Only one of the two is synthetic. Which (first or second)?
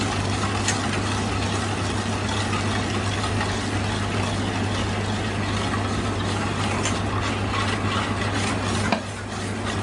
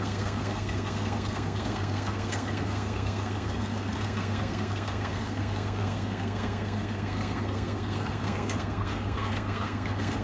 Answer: second